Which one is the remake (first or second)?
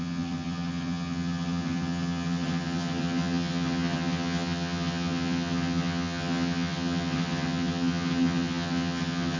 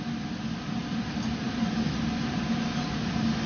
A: first